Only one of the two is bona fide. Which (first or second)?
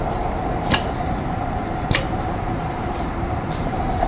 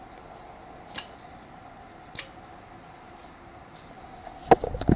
second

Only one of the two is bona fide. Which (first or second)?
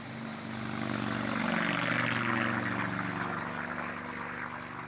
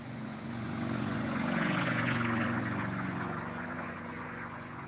first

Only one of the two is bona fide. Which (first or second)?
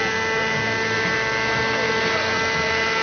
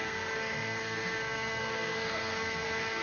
first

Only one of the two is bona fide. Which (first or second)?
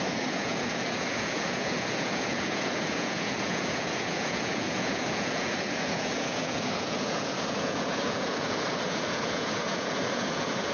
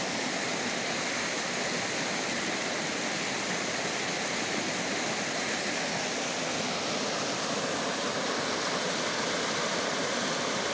second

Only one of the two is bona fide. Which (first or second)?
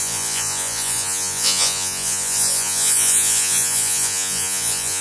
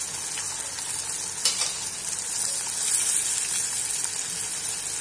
second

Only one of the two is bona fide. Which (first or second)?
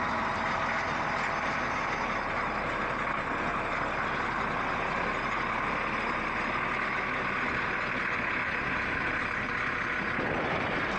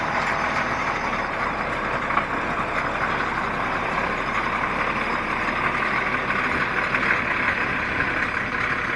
first